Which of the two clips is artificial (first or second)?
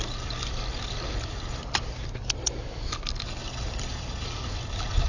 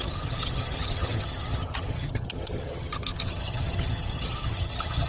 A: second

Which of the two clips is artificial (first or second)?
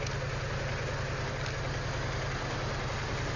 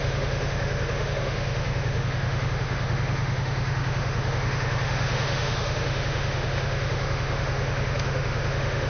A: second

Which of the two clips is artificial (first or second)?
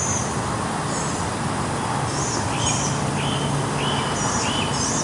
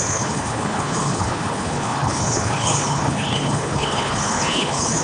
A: second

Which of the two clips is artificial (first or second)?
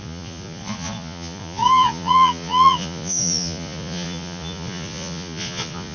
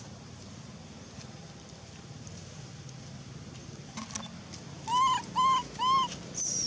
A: first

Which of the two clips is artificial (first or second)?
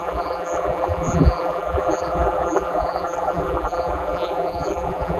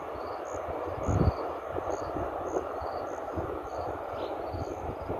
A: first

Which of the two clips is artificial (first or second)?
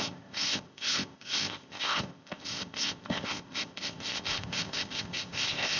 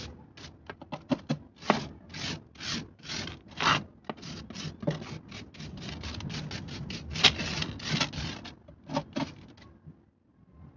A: first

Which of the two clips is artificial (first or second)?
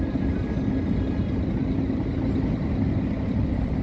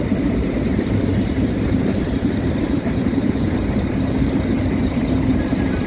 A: second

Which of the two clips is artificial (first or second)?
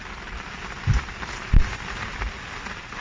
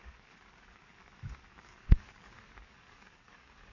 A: second